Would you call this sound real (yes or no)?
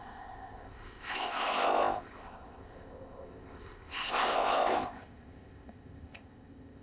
no